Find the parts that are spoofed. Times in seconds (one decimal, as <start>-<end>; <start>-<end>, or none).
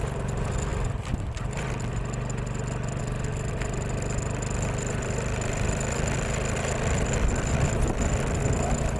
none